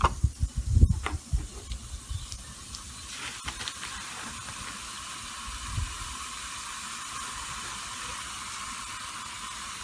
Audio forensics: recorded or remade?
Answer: recorded